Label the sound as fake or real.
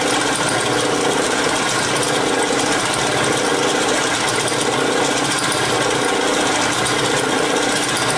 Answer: real